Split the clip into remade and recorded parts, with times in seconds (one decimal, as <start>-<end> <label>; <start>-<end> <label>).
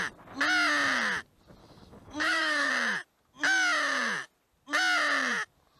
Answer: 0.0-1.6 recorded; 1.6-2.7 remade; 2.7-5.8 recorded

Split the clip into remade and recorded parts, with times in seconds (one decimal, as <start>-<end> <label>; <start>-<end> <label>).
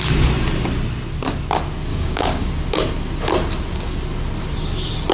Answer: 0.0-1.9 recorded; 1.9-2.5 remade; 2.5-5.1 recorded